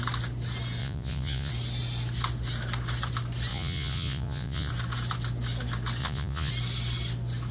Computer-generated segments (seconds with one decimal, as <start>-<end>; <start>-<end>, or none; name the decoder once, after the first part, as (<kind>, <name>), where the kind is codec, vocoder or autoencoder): 0.8-1.5 (vocoder, Vocos); 3.5-4.7; 6.0-6.5